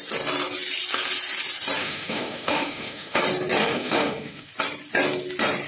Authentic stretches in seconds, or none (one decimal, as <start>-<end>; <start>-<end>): 0.0-1.8; 3.2-3.6; 4.5-5.7